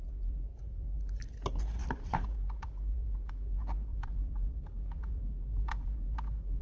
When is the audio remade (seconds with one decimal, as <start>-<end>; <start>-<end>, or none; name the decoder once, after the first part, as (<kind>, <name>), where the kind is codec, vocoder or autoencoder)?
0.6-1.3 (vocoder, BigVGAN v2); 1.8-3.3; 3.9-6.6